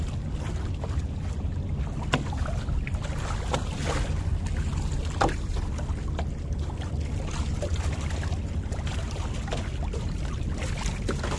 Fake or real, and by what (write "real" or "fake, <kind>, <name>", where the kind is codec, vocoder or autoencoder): real